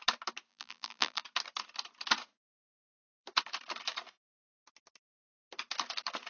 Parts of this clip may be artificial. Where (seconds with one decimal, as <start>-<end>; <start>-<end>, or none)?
0.5-1.2

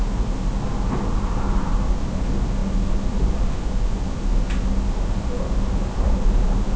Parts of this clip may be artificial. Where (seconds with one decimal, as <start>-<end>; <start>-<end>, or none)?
none

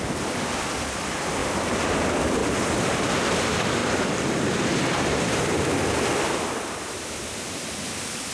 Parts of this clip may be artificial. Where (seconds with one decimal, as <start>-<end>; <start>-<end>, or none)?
2.4-3.0; 3.8-5.4

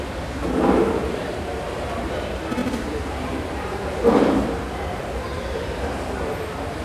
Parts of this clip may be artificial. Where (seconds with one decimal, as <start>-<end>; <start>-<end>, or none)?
1.0-2.1; 2.6-6.2

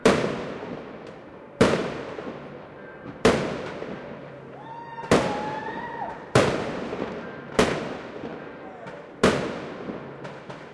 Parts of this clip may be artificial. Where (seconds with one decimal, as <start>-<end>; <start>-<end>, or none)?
0.0-8.3

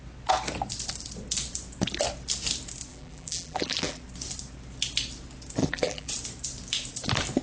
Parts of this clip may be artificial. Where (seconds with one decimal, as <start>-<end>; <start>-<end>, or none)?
2.9-4.0; 5.6-6.1